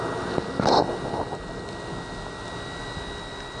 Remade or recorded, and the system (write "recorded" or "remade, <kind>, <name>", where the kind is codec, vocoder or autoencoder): recorded